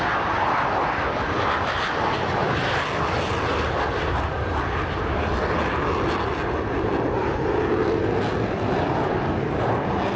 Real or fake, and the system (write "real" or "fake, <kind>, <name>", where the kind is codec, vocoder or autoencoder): real